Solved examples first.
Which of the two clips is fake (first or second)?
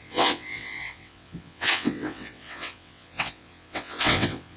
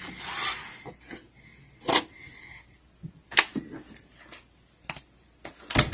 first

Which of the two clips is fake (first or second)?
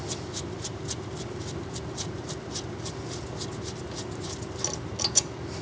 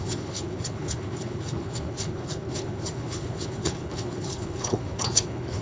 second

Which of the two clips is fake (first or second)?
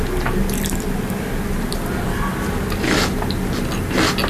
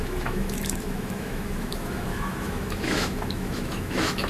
second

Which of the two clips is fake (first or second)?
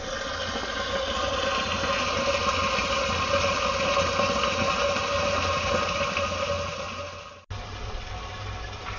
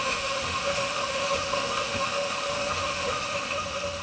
second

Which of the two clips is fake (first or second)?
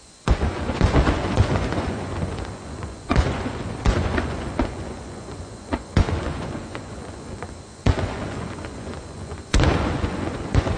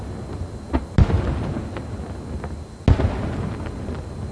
first